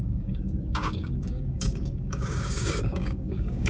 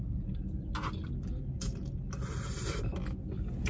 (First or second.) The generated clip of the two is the first